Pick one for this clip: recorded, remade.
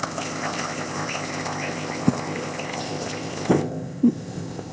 remade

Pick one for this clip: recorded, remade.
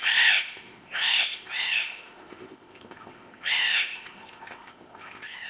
remade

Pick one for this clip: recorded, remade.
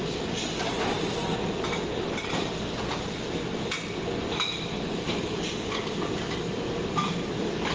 recorded